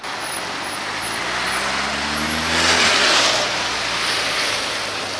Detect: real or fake real